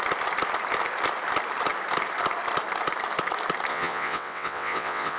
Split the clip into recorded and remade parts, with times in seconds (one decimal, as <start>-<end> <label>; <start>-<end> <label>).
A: 0.0-3.7 recorded; 3.7-5.2 remade